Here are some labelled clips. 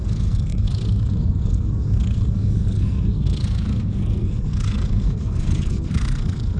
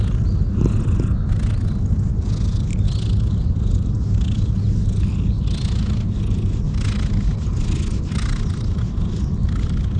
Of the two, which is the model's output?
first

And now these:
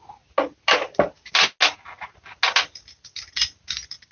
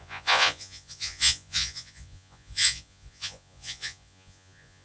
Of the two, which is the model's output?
second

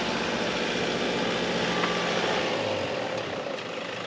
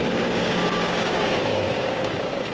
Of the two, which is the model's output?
second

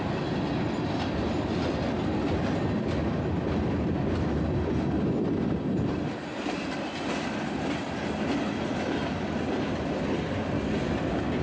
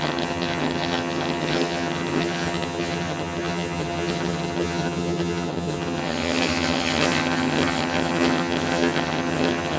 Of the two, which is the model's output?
second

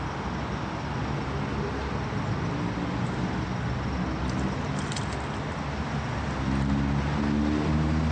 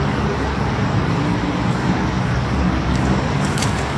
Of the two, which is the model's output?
second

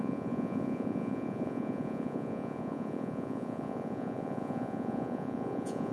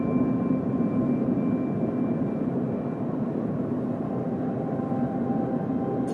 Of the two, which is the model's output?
first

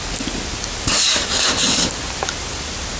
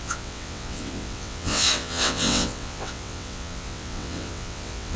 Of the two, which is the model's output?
second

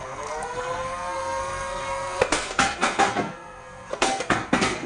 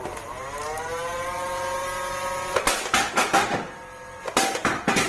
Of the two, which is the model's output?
first